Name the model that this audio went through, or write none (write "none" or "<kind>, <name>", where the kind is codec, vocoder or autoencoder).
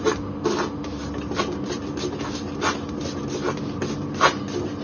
none